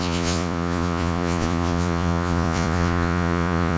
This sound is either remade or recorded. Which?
remade